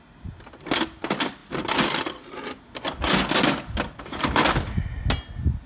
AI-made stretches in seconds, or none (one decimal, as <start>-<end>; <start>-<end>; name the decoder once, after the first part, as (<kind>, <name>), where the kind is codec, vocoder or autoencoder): none